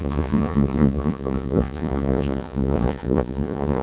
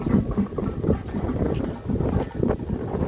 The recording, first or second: second